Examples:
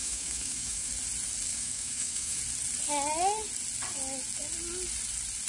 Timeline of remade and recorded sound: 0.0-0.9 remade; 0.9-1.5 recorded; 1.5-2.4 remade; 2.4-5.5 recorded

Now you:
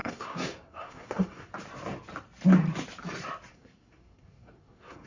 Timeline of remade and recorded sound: 0.0-1.5 remade; 1.5-3.5 recorded; 3.5-5.1 remade

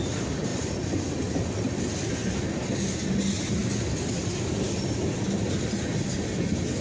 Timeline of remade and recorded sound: 0.0-6.8 recorded

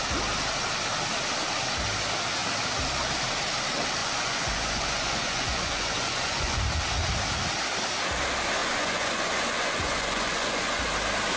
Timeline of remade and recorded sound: 0.0-4.0 recorded; 4.0-6.6 remade; 6.6-8.6 recorded; 8.6-10.8 remade; 10.8-11.4 recorded